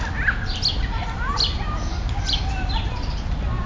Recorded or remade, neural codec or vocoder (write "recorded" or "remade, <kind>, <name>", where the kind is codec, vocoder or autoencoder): recorded